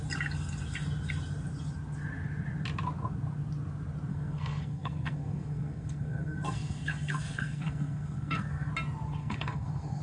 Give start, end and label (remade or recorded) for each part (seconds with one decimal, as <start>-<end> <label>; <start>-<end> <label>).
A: 0.0-4.1 recorded; 4.1-8.7 remade; 8.7-9.2 recorded; 9.2-10.0 remade